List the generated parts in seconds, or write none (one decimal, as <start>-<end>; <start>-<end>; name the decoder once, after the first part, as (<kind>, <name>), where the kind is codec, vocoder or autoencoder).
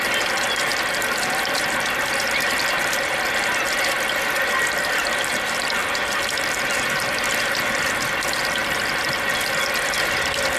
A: none